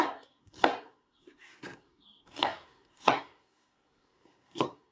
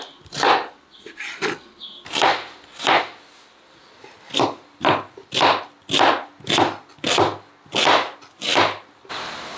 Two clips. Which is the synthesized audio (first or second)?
first